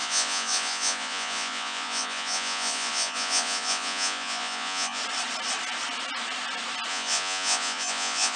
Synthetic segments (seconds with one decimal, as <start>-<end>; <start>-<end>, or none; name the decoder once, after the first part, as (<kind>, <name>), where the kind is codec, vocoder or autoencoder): 0.0-5.0 (vocoder, Vocos); 6.9-8.4